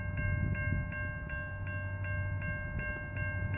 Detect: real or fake real